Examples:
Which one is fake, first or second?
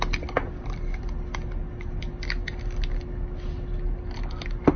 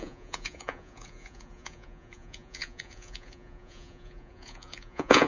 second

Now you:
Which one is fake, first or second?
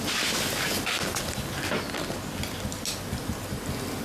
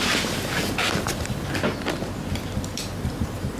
second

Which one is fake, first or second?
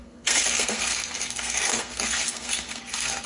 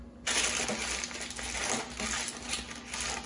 first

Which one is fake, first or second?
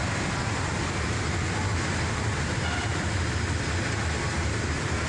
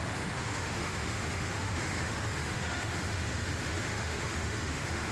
second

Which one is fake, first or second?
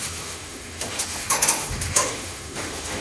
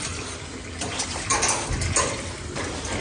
first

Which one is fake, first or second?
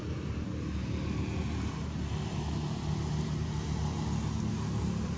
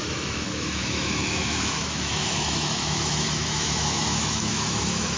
second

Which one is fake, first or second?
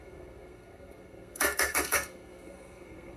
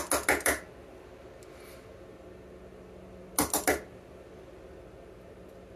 first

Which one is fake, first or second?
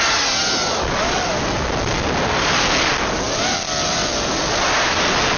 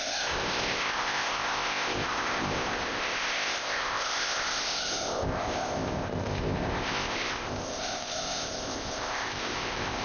second